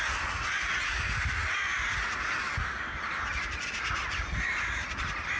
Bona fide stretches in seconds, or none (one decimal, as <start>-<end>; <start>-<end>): 0.0-5.4